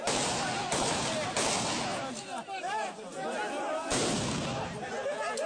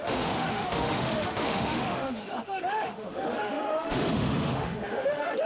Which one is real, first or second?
first